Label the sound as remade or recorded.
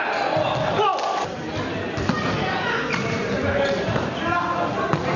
recorded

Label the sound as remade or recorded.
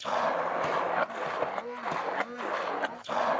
recorded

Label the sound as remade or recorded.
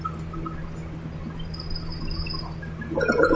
recorded